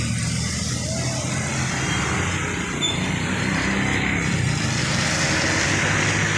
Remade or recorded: recorded